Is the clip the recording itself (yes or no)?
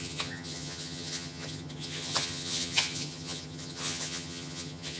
no